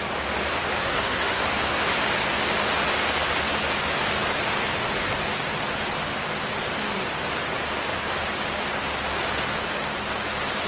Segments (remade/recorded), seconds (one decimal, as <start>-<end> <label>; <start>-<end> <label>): 0.0-0.8 recorded; 0.8-1.4 remade; 1.4-10.7 recorded